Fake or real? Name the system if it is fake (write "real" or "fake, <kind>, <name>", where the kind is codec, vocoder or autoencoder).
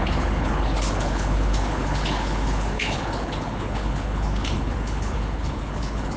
fake, codec, HILCodec